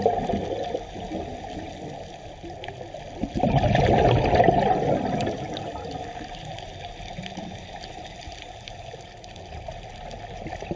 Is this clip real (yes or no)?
yes